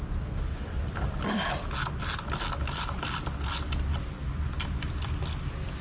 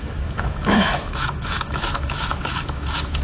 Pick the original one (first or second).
first